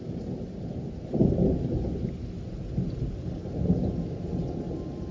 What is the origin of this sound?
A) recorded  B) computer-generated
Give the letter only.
A